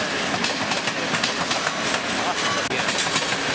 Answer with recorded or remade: recorded